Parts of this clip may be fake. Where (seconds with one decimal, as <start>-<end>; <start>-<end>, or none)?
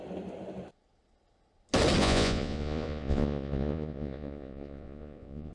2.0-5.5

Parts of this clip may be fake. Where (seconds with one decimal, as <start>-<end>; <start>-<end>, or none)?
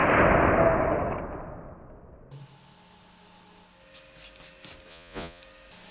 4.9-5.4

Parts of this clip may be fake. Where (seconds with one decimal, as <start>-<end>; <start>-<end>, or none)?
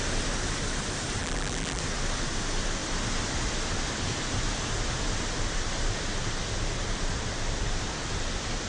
1.2-1.8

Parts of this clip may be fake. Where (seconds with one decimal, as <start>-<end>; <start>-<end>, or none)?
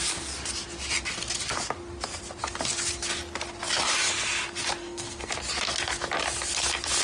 4.8-5.3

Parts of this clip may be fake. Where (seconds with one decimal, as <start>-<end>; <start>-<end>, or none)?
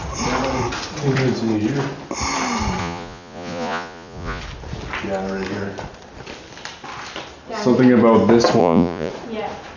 2.8-4.4; 8.6-9.1